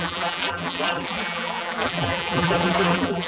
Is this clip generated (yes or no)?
yes